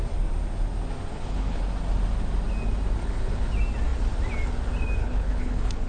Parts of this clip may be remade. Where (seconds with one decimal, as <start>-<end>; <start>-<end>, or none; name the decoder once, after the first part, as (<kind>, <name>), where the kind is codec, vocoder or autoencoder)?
1.1-1.6 (codec, HILCodec); 3.0-3.5; 5.0-5.9